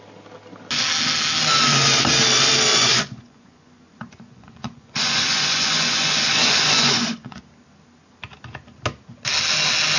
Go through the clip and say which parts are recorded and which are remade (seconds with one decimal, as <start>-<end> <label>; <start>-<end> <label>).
0.0-2.7 recorded; 2.7-7.4 remade; 7.4-10.0 recorded